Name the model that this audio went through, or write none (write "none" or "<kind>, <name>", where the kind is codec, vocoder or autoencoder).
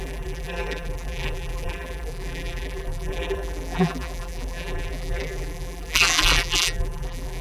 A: vocoder, BigVGAN v2